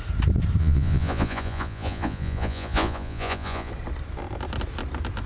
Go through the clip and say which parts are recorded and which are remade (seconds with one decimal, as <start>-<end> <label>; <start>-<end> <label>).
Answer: 0.0-0.6 recorded; 0.6-3.7 remade; 3.7-5.3 recorded